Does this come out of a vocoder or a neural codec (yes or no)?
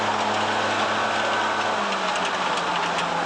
no